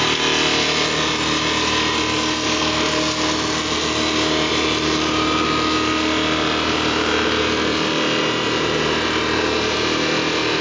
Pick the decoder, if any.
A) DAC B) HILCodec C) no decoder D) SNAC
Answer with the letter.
C